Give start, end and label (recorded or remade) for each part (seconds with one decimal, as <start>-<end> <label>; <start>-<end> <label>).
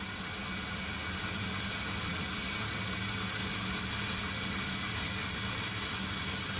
0.0-6.6 recorded